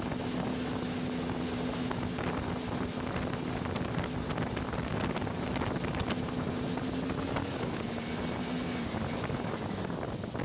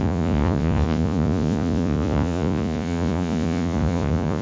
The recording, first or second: first